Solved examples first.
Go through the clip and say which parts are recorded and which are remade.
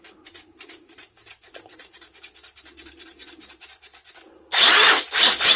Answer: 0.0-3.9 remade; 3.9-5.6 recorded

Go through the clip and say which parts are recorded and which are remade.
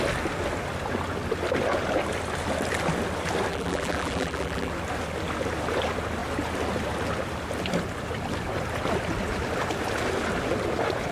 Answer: 0.0-3.5 recorded; 3.5-4.7 remade; 4.7-11.1 recorded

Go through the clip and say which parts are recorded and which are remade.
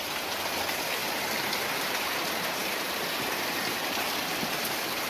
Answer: 0.0-1.0 recorded; 1.0-1.9 remade; 1.9-2.6 recorded; 2.6-4.2 remade; 4.2-5.1 recorded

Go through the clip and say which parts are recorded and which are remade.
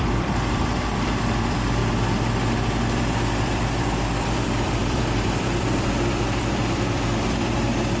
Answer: 0.0-1.8 remade; 1.8-2.6 recorded; 2.6-8.0 remade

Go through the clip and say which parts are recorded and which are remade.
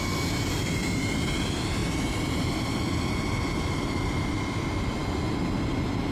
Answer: 0.0-5.0 remade; 5.0-6.1 recorded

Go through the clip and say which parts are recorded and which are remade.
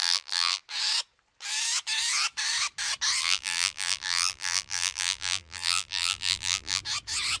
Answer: 0.0-0.6 remade; 0.6-3.2 recorded; 3.2-6.8 remade; 6.8-7.4 recorded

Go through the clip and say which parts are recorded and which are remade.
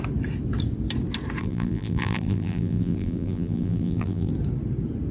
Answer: 0.0-1.4 recorded; 1.4-4.3 remade; 4.3-5.1 recorded